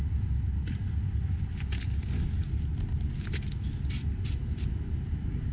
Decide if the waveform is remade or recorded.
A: recorded